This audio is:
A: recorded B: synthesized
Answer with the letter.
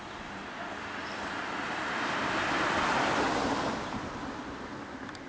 A